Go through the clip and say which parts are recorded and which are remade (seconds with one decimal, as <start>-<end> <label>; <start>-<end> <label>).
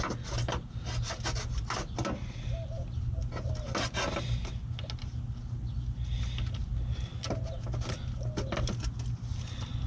0.0-9.9 recorded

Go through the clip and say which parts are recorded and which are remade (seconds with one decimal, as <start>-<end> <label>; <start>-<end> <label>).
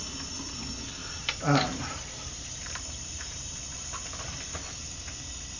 0.0-1.0 recorded; 1.0-4.4 remade; 4.4-5.6 recorded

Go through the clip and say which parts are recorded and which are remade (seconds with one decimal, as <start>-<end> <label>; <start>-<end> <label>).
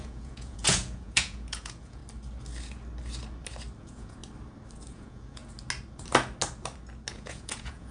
0.0-2.0 remade; 2.0-3.8 recorded; 3.8-4.2 remade; 4.2-4.8 recorded; 4.8-5.4 remade; 5.4-7.1 recorded; 7.1-7.9 remade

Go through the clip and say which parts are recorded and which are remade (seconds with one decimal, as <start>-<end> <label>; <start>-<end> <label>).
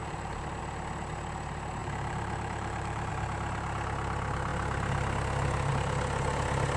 0.0-0.6 remade; 0.6-1.8 recorded; 1.8-3.1 remade; 3.1-6.8 recorded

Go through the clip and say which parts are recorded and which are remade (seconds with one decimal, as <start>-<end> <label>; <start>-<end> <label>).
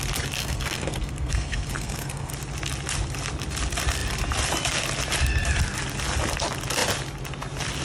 0.0-0.4 recorded; 0.4-2.3 remade; 2.3-7.8 recorded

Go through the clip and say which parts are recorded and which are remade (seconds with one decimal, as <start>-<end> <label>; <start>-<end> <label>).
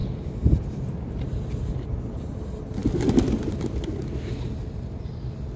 0.0-5.6 recorded